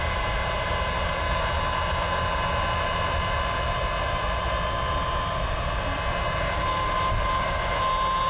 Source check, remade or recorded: recorded